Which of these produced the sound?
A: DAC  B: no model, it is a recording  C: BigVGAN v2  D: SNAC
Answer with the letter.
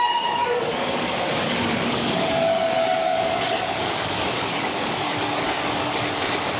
A